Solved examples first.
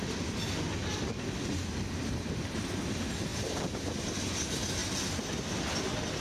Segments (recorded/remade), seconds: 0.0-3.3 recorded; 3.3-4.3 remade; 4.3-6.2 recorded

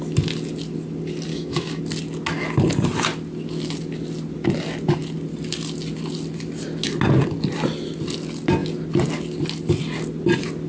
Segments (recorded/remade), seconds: 0.0-1.3 recorded; 1.3-1.8 remade; 1.8-10.7 recorded